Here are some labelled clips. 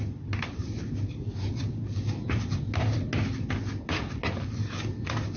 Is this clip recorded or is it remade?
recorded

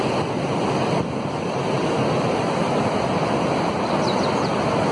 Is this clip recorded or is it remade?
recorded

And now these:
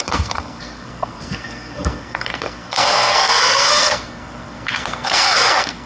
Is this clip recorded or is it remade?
remade